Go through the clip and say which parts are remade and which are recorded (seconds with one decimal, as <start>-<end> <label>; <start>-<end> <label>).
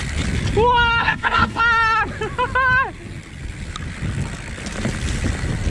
0.0-1.0 recorded; 1.0-1.6 remade; 1.6-5.7 recorded